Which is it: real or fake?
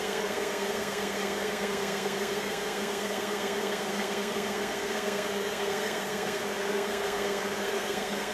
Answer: fake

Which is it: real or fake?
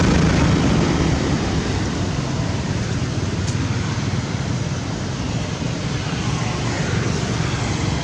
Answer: fake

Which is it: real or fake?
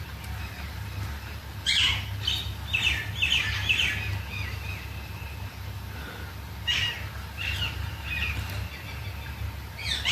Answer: real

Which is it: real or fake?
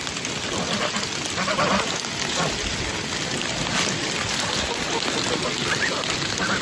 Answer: real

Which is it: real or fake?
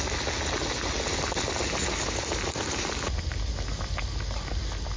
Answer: real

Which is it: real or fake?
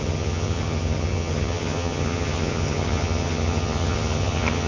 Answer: fake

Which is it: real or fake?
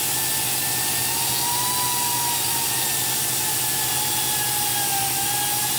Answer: real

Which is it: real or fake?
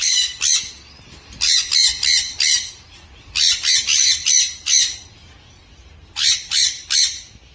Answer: real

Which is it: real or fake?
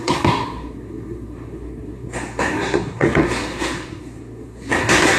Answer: fake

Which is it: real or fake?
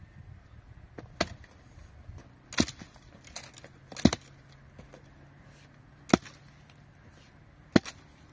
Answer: real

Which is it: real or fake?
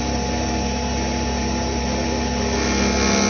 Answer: real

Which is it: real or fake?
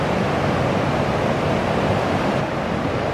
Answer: real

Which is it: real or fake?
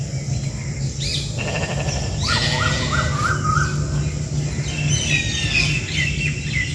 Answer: real